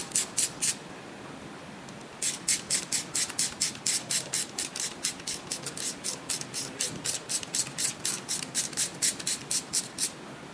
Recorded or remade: recorded